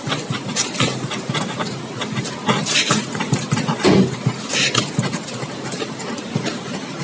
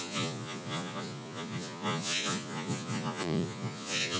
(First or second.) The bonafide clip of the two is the first